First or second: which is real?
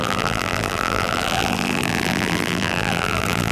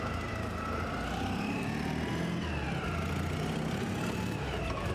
second